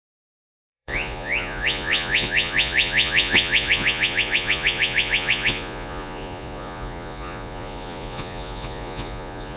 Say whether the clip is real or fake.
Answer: fake